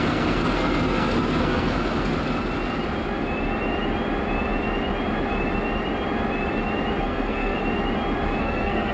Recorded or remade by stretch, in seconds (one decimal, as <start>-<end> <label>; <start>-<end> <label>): 0.0-2.1 remade; 2.1-7.0 recorded; 7.0-7.6 remade; 7.6-8.4 recorded; 8.4-8.9 remade